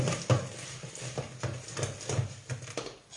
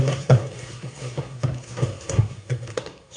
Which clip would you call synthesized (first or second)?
second